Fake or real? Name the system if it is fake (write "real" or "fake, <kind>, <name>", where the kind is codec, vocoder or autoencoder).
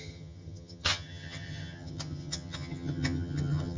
fake, vocoder, HiFi-GAN